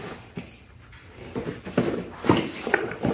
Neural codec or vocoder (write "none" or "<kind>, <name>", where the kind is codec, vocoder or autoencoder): none